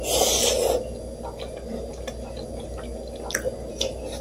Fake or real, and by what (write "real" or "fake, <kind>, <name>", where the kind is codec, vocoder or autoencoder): real